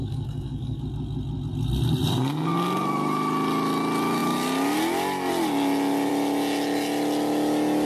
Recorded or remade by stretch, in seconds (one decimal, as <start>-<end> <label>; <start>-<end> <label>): 0.0-0.8 remade; 0.8-7.8 recorded